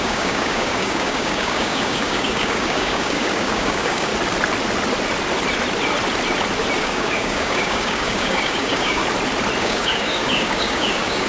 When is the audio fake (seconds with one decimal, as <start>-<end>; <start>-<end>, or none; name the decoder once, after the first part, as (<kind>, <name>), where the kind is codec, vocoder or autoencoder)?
0.0-4.1 (codec, DAC); 6.8-9.0; 9.6-11.3